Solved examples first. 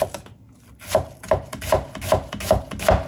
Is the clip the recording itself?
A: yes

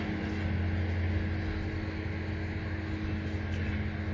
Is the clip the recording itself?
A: yes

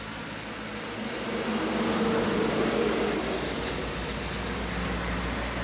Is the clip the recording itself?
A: yes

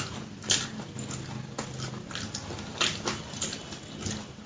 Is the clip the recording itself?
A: yes